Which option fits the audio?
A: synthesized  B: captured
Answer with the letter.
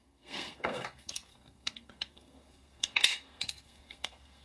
A